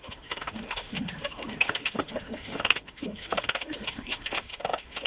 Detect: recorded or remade remade